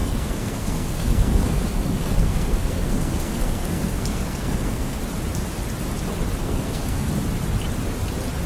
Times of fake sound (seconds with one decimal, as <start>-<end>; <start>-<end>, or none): 0.0-5.0; 6.4-7.1